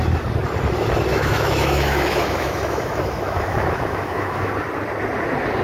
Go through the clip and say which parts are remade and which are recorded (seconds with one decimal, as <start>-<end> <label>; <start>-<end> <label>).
0.0-1.1 recorded; 1.1-4.5 remade; 4.5-5.6 recorded